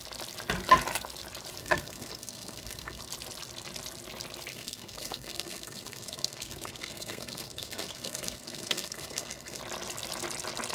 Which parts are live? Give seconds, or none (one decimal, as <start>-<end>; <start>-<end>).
0.0-1.6; 3.0-4.5; 9.6-10.7